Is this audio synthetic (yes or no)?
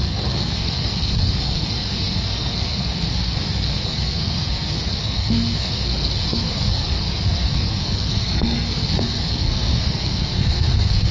yes